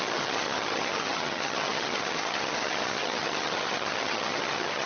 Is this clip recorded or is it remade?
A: remade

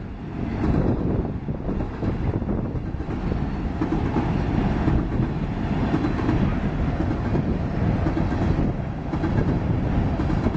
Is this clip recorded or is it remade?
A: recorded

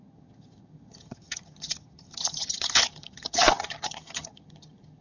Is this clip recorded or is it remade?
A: remade